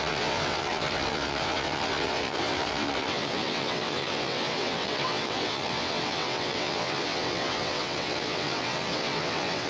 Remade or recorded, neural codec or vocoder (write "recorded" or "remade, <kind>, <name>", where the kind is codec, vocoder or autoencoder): remade, vocoder, WaveNeXt